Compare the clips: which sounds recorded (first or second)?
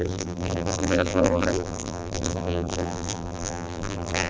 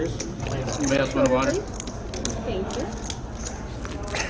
second